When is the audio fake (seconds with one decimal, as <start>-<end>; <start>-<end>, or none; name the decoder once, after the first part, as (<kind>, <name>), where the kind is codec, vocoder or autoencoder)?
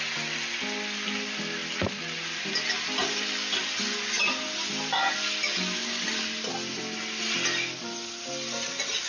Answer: none